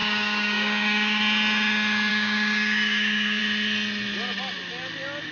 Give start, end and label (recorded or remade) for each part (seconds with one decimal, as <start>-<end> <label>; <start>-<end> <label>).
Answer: 0.0-1.2 remade; 1.2-2.1 recorded; 2.1-3.4 remade; 3.4-5.3 recorded